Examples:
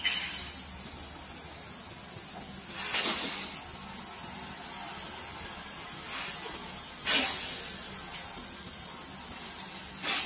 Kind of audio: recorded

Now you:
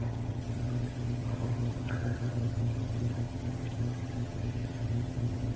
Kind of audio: remade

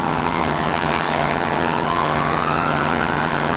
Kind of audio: remade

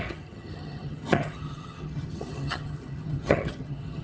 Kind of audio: remade